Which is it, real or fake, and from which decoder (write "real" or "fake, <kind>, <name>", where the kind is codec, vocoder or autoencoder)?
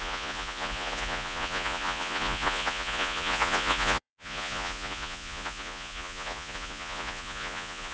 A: fake, vocoder, Vocos